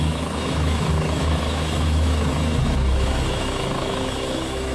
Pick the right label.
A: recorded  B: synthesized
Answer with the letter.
B